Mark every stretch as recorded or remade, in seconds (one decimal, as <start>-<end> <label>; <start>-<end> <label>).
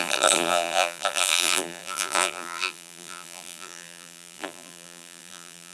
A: 0.0-5.7 remade